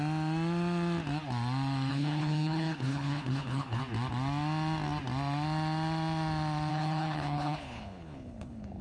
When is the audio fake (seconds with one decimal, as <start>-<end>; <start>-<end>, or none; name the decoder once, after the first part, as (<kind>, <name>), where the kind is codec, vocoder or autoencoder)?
1.9-3.8 (codec, HILCodec); 6.7-8.8